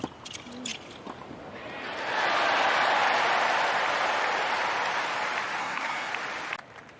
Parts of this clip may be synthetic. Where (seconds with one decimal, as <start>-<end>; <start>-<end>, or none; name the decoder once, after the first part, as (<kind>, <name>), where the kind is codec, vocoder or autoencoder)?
5.6-6.1 (codec, SNAC)